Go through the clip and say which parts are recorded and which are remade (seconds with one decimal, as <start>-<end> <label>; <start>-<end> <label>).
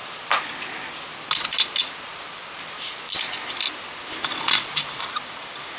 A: 0.0-5.8 recorded